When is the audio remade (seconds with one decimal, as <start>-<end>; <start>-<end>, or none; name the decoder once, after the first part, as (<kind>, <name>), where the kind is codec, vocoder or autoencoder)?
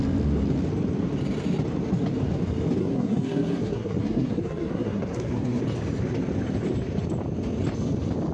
2.8-5.6 (codec, SNAC)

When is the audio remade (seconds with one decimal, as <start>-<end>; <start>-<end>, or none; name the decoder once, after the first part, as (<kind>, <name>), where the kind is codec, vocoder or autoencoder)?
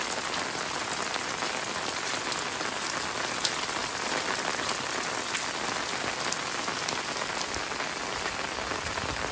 none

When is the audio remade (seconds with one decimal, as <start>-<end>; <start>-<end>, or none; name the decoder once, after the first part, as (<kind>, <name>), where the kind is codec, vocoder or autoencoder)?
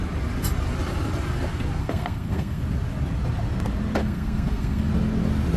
1.8-2.6 (codec, SNAC); 4.0-4.9